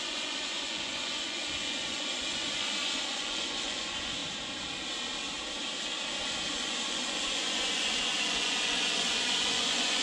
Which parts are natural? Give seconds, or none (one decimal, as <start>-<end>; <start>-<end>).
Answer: 4.2-6.5